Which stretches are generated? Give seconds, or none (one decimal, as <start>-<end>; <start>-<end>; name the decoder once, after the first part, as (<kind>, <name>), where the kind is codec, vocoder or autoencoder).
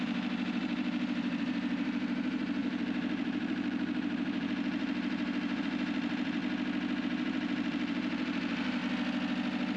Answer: 0.0-6.4 (vocoder, BigVGAN v2); 7.0-8.8